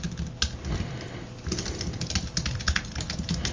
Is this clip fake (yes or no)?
no